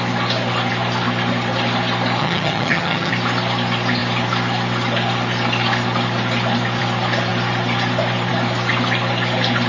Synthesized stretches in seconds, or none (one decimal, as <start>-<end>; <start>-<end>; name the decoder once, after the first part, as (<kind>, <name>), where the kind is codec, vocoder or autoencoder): 2.2-3.1 (vocoder, HiFi-GAN)